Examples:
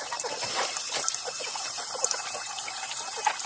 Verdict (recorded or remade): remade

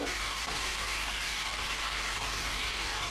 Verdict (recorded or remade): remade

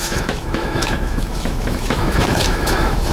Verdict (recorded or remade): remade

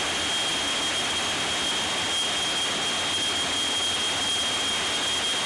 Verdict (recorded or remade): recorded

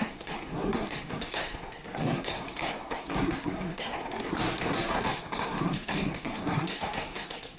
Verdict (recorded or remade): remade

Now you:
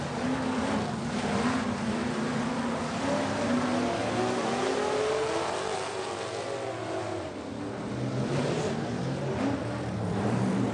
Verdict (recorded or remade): recorded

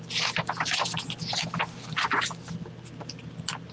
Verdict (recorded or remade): recorded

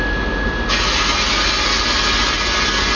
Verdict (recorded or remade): recorded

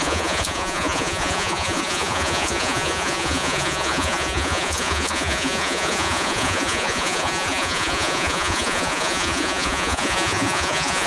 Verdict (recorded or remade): remade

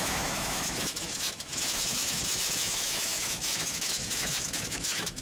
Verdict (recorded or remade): remade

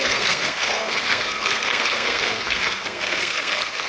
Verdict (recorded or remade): remade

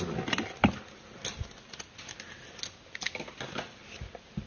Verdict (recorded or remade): recorded